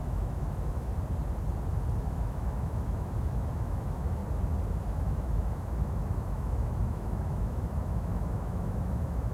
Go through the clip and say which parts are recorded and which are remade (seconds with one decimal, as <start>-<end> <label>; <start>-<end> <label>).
0.0-0.9 remade; 0.9-2.0 recorded; 2.0-4.2 remade; 4.2-4.8 recorded; 4.8-9.3 remade